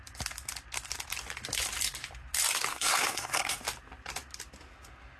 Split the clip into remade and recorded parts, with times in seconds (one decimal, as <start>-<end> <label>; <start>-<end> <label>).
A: 0.0-2.7 recorded; 2.7-3.6 remade; 3.6-5.2 recorded